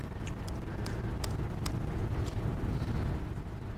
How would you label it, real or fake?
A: real